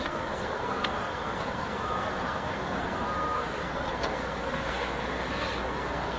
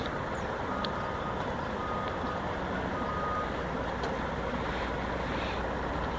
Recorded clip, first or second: second